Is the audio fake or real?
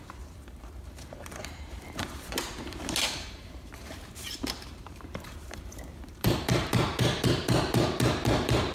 fake